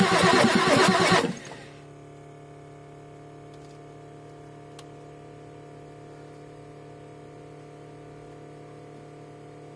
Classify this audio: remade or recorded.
recorded